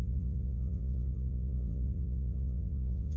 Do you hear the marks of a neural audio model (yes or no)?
yes